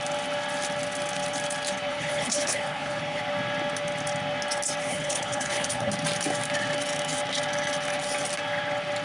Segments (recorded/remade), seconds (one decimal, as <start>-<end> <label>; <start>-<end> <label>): 0.0-1.9 recorded; 1.9-3.2 remade; 3.2-4.9 recorded; 4.9-5.9 remade; 5.9-9.0 recorded